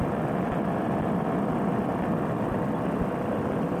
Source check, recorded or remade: recorded